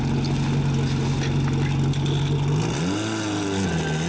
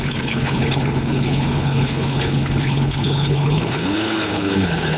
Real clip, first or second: first